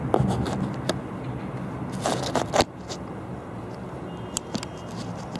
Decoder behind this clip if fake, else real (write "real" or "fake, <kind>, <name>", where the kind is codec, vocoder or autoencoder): real